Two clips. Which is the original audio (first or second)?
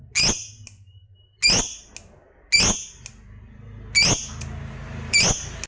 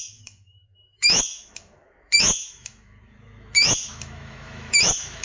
first